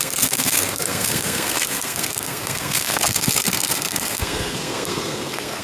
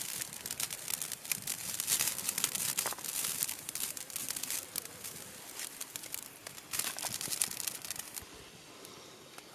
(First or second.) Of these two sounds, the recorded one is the second